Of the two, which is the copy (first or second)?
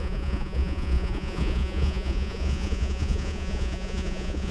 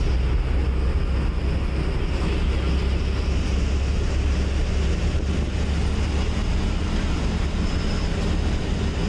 first